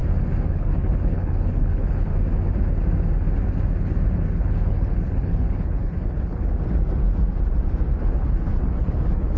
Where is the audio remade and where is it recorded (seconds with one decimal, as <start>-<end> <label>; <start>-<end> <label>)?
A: 0.0-0.5 recorded; 0.5-2.1 remade; 2.1-4.1 recorded; 4.1-6.5 remade; 6.5-8.0 recorded; 8.0-9.4 remade

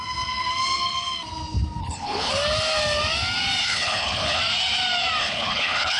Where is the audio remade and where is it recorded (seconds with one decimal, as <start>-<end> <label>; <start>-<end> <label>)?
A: 0.0-1.8 recorded; 1.8-2.3 remade; 2.3-3.6 recorded; 3.6-4.4 remade; 4.4-5.2 recorded; 5.2-6.0 remade

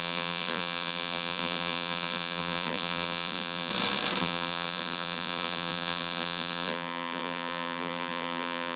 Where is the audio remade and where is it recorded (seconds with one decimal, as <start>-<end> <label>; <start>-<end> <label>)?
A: 0.0-3.7 remade; 3.7-4.2 recorded; 4.2-8.8 remade

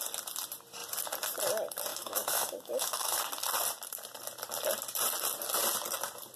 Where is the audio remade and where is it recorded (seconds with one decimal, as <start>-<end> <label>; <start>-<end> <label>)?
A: 0.0-1.9 recorded; 1.9-3.2 remade; 3.2-6.4 recorded

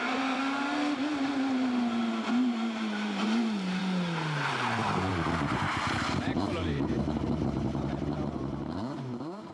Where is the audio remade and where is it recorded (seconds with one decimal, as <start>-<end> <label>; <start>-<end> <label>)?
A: 0.0-3.8 remade; 3.8-4.5 recorded; 4.5-9.5 remade

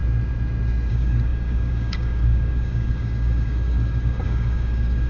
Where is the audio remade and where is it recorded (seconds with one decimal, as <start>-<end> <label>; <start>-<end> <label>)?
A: 0.0-0.9 recorded; 0.9-5.1 remade

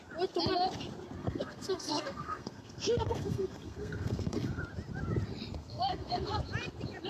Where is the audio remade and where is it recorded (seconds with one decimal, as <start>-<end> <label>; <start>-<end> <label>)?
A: 0.0-1.2 recorded; 1.2-4.6 remade; 4.6-5.6 recorded; 5.6-6.4 remade; 6.4-7.1 recorded

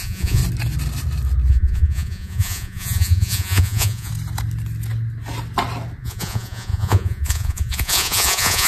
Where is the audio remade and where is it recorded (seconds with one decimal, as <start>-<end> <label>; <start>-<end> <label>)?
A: 0.0-0.4 remade; 0.4-1.5 recorded; 1.5-4.1 remade; 4.1-6.0 recorded; 6.0-8.7 remade